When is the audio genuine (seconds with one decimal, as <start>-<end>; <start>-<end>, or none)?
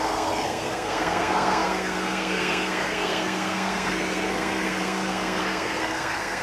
none